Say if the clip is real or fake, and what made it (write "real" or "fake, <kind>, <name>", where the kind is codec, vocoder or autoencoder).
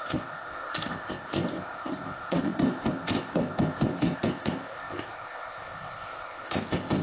fake, codec, ZipCodec